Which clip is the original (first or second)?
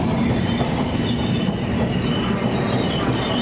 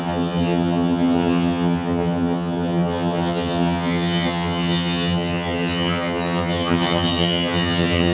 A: first